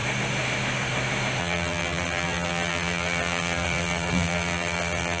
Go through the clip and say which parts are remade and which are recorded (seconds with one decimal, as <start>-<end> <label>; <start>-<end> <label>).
0.0-1.4 recorded; 1.4-5.2 remade